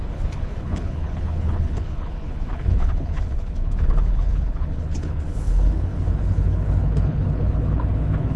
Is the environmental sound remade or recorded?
remade